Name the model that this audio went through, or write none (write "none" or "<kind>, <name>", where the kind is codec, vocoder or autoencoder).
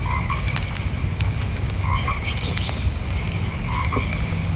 codec, DAC